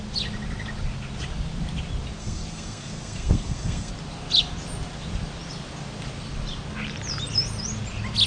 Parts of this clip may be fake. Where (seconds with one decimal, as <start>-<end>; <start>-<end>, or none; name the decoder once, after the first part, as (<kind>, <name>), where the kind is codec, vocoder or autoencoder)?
2.2-3.9 (codec, SNAC)